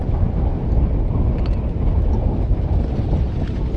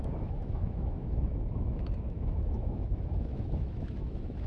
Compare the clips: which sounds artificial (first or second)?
second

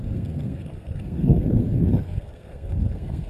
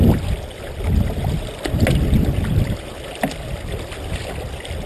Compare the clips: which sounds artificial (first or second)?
first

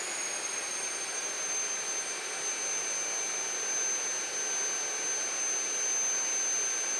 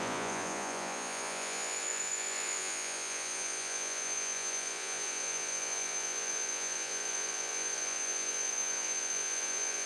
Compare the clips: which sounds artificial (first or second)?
second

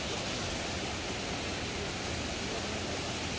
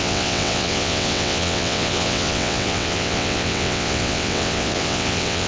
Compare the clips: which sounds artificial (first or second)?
second